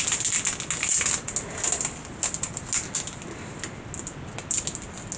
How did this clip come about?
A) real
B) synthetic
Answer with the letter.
A